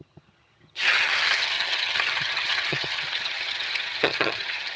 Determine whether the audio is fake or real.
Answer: fake